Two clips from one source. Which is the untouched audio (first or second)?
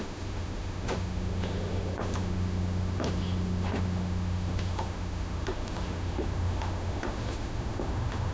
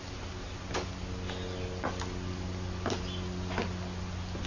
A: second